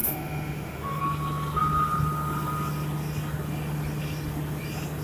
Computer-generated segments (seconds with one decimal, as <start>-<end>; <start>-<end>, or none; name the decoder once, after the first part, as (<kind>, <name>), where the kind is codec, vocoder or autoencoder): 0.0-1.0 (autoencoder, DAC-VAE)